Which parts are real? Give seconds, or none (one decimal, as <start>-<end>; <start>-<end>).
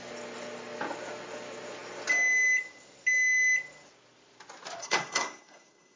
0.0-4.8